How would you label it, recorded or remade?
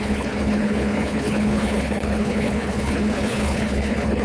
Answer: remade